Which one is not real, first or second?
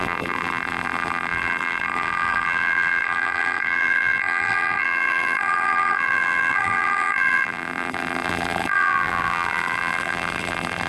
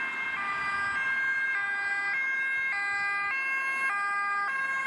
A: first